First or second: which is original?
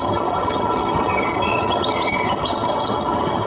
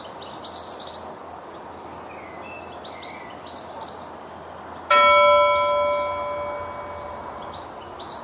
second